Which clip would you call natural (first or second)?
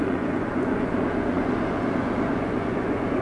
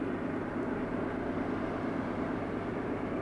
second